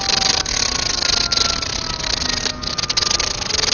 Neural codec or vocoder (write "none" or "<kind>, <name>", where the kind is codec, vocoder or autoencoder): none